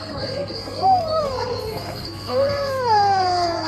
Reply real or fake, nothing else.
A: fake